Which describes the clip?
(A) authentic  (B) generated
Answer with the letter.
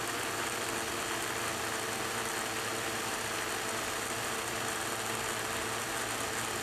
A